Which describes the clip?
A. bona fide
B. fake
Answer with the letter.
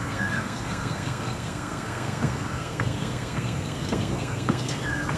B